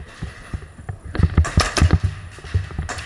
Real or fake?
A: real